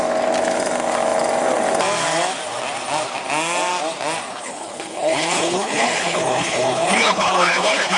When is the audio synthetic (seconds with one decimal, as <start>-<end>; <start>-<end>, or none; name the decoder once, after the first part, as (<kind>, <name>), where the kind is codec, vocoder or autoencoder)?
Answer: 4.3-8.0 (codec, HILCodec)